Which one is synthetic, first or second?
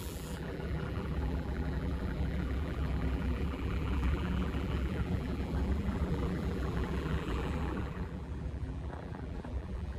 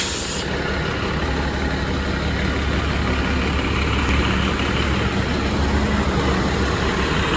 first